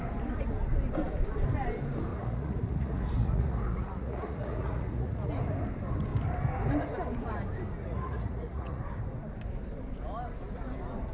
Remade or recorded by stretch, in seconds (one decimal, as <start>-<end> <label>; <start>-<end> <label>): 0.0-2.1 recorded; 2.1-5.3 remade; 5.3-7.8 recorded; 7.8-8.8 remade; 8.8-11.1 recorded